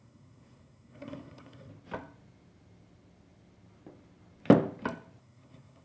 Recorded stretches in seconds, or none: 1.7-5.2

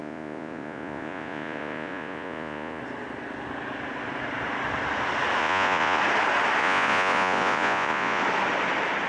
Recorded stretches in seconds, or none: 2.8-5.4; 6.0-6.6; 8.2-9.1

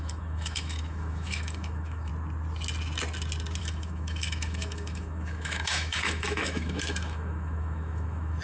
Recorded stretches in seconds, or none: 2.1-3.6